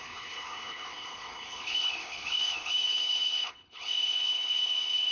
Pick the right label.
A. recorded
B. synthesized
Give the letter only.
B